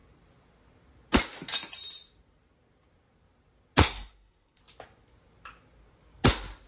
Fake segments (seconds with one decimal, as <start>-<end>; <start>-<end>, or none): 3.8-4.6